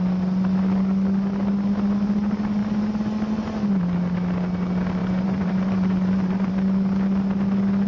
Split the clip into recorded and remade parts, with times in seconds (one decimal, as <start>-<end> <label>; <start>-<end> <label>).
0.0-5.0 recorded; 5.0-6.5 remade; 6.5-7.9 recorded